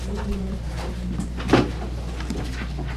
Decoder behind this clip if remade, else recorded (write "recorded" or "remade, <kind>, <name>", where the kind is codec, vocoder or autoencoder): recorded